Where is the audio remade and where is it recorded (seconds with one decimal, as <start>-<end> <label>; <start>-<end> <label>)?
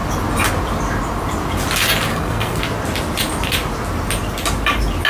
0.0-2.1 recorded; 2.1-2.6 remade; 2.6-5.1 recorded